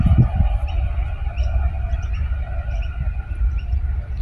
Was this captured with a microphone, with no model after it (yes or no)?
yes